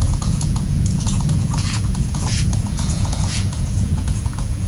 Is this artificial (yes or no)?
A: yes